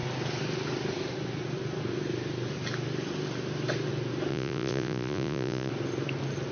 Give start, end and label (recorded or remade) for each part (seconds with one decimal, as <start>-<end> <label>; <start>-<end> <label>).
0.0-4.3 recorded; 4.3-5.7 remade; 5.7-6.5 recorded